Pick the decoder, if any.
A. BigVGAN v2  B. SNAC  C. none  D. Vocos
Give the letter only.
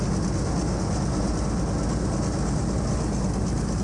C